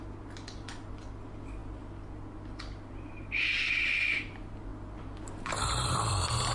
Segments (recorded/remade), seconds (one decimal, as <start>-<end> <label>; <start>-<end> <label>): 0.0-6.5 recorded